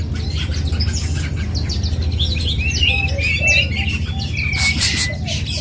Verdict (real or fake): real